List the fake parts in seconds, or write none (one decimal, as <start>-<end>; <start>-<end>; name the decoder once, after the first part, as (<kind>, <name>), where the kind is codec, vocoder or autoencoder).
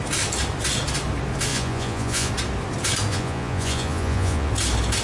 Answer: 1.5-2.3 (vocoder, Vocos); 3.1-4.5